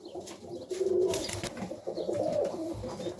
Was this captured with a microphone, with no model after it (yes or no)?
yes